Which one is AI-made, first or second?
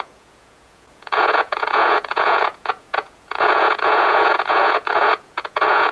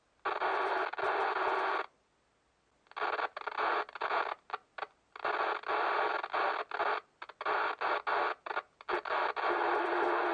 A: first